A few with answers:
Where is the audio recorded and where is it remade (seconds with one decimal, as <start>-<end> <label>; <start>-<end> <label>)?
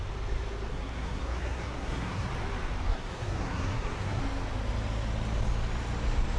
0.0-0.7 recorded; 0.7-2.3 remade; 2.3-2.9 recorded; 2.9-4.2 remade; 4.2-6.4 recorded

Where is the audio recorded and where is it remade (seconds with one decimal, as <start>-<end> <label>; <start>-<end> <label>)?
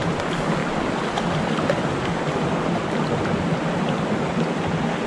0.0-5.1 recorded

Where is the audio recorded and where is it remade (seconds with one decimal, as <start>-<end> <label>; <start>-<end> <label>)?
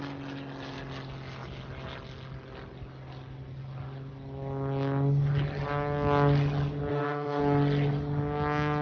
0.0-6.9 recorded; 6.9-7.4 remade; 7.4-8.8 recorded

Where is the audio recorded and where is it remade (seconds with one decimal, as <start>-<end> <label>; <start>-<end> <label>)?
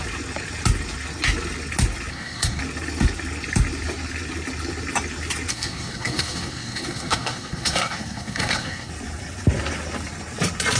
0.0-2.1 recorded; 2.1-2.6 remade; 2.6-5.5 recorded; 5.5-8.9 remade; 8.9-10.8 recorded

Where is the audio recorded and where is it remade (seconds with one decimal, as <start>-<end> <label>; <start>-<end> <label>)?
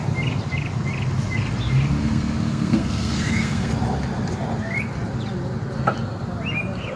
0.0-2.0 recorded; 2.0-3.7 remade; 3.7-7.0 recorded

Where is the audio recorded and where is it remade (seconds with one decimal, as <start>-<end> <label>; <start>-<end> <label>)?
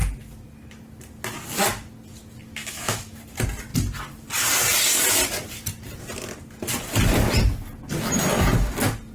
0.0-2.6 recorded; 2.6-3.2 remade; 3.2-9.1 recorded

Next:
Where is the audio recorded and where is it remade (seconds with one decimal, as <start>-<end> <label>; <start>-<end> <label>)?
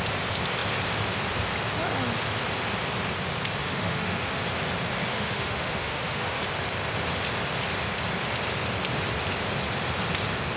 0.0-3.6 recorded; 3.6-4.4 remade; 4.4-5.1 recorded; 5.1-6.4 remade; 6.4-10.6 recorded